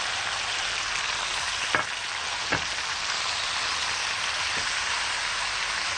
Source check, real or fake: real